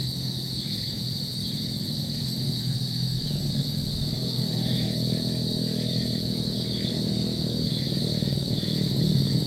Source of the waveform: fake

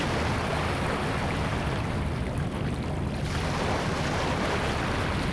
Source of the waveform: real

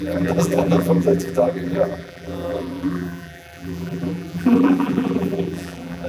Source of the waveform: fake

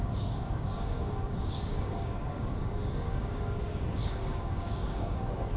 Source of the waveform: fake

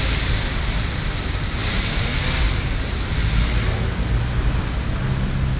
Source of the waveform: real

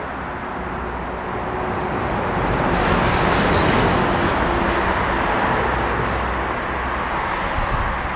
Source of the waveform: real